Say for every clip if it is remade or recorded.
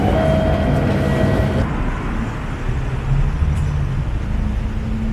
recorded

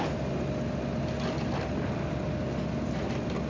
recorded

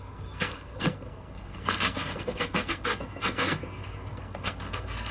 remade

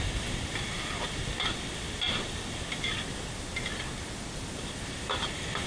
recorded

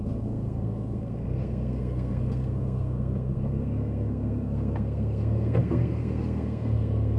remade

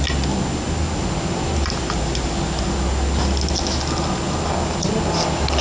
recorded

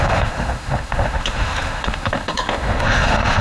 remade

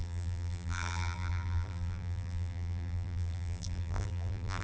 remade